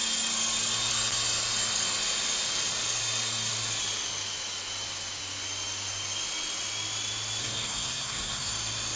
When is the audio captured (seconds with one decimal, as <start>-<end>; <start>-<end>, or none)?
0.0-7.4; 8.5-9.0